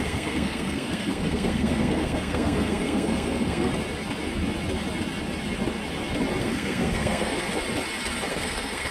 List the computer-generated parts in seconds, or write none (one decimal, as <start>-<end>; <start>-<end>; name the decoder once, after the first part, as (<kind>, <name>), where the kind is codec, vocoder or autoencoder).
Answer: 0.0-3.7 (codec, SNAC); 6.4-7.4; 8.3-8.9